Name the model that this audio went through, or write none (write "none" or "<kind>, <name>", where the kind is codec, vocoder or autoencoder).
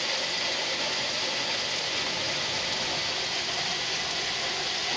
vocoder, Vocos